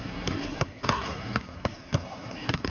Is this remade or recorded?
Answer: remade